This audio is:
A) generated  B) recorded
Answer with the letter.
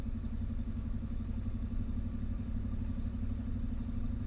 B